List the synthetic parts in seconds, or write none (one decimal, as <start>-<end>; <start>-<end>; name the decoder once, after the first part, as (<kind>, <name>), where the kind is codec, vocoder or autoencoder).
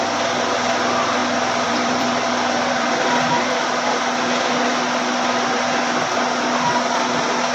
1.2-3.7 (vocoder, BigVGAN v2)